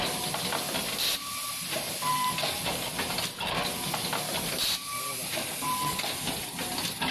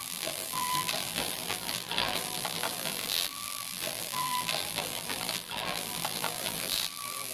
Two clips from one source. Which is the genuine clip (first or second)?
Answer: first